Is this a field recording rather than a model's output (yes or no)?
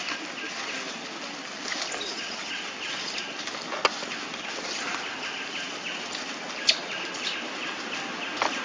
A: yes